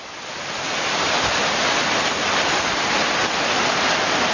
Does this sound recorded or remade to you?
recorded